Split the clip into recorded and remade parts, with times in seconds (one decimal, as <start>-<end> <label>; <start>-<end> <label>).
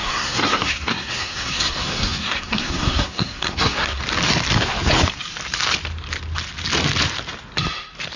0.0-4.0 remade; 4.0-8.2 recorded